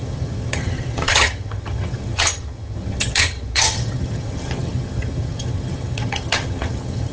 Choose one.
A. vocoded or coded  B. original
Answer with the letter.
A